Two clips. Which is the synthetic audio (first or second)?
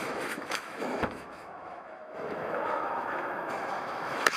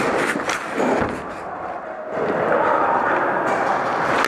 first